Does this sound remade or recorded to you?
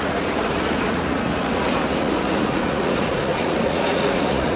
remade